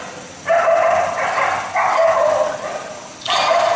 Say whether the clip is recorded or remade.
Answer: remade